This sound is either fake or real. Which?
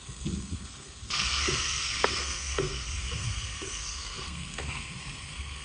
fake